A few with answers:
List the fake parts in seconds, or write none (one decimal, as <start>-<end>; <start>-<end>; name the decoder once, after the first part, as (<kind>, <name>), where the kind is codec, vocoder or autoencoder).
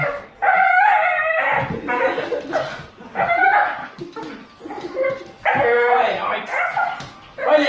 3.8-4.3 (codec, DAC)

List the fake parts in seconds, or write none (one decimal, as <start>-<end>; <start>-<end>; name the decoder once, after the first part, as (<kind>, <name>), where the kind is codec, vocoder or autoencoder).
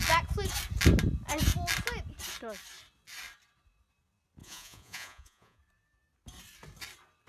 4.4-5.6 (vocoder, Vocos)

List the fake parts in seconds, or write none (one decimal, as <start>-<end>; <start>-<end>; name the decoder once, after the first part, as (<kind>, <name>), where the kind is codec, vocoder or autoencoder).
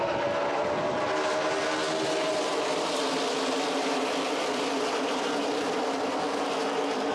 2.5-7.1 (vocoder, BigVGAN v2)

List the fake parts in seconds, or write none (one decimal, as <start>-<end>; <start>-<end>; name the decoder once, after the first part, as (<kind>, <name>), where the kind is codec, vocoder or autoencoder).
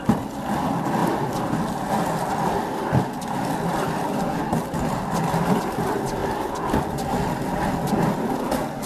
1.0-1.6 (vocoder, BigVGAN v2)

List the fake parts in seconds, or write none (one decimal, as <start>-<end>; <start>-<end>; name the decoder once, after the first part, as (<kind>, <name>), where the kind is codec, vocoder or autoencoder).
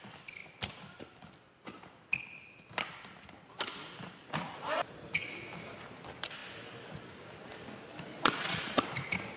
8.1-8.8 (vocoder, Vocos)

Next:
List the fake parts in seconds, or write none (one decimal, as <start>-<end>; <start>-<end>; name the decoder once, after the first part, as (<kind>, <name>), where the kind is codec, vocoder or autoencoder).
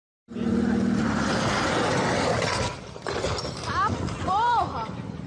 none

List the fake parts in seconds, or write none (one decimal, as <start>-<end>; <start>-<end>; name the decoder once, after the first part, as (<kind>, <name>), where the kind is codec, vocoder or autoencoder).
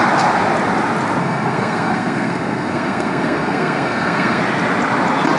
1.2-4.4 (codec, SNAC)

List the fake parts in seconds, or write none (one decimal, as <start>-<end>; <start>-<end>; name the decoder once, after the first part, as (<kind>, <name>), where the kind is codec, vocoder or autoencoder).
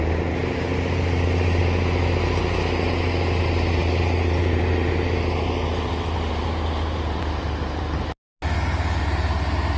0.4-1.6 (vocoder, BigVGAN v2); 3.8-7.8